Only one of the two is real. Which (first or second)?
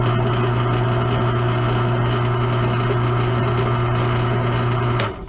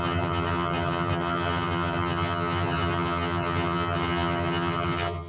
first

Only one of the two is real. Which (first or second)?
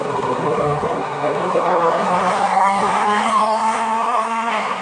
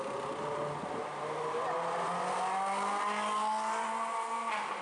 second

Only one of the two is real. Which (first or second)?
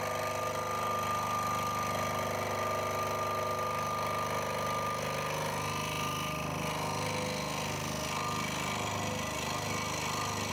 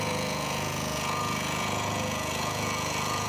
first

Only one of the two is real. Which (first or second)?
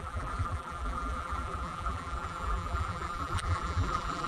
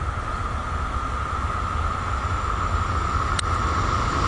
second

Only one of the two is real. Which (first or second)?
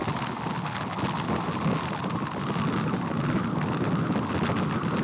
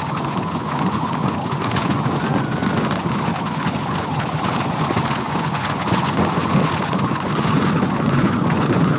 first